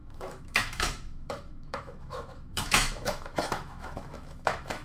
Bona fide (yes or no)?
no